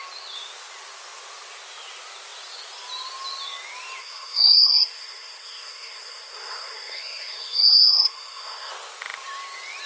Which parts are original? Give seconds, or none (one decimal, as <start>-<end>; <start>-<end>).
0.0-4.0; 8.7-9.9